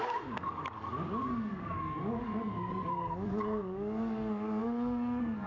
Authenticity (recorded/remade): remade